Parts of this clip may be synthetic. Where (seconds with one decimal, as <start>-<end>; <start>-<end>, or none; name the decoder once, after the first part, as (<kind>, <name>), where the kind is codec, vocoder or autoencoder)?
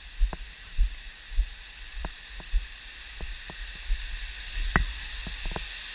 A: none